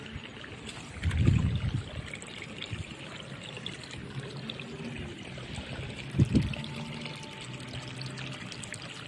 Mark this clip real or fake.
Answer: real